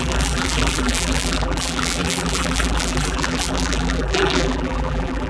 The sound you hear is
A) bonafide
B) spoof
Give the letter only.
B